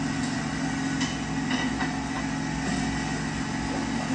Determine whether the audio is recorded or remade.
recorded